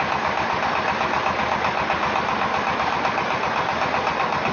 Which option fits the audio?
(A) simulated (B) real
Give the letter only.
B